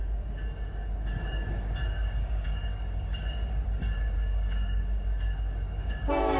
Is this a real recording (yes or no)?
no